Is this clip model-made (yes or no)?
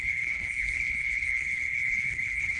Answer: yes